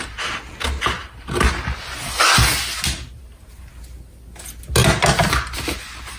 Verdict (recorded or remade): recorded